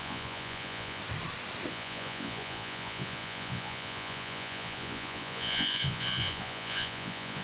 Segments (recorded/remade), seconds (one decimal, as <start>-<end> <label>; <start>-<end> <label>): 0.0-1.0 remade; 1.0-1.7 recorded; 1.7-7.4 remade